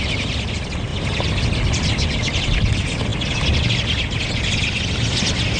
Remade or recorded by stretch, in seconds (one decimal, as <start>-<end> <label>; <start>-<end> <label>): 0.0-0.9 recorded; 0.9-2.4 remade; 2.4-5.6 recorded